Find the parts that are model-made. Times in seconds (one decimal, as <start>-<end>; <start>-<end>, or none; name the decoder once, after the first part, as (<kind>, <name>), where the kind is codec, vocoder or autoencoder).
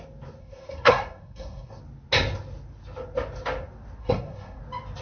0.4-1.8 (codec, SNAC); 4.0-4.6